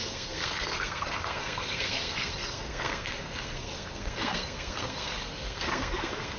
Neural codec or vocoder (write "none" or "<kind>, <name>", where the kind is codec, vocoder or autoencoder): codec, SNAC